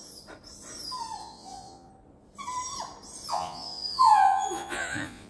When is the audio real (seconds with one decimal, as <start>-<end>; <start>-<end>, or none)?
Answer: 0.0-1.2; 1.9-3.3